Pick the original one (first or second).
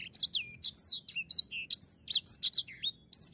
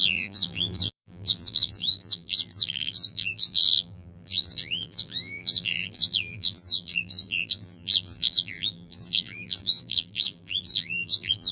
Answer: first